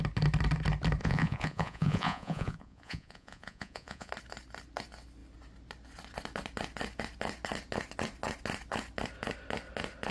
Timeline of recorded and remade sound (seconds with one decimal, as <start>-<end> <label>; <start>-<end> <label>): 0.0-1.0 recorded; 1.0-4.1 remade; 4.1-10.1 recorded